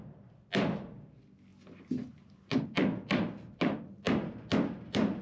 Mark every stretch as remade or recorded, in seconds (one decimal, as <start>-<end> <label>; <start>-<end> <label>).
0.0-5.2 recorded